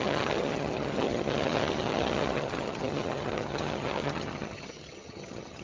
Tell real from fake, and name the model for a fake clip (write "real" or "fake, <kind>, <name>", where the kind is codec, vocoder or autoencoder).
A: fake, vocoder, HiFi-GAN